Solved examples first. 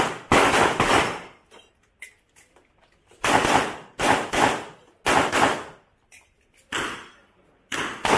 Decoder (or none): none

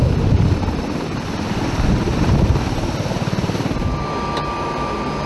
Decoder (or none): none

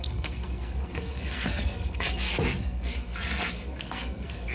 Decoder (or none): codec, SNAC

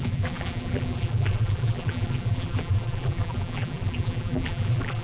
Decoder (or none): vocoder, BigVGAN v2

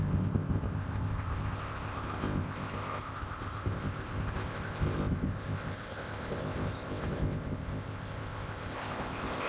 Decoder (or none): codec, ZipCodec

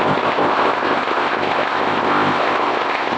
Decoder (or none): codec, ZipCodec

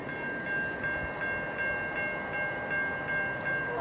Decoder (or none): none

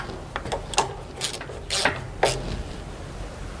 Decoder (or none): none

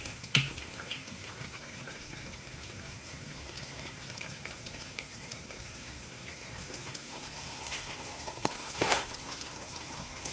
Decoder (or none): codec, SNAC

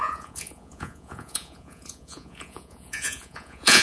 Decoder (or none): vocoder, Vocos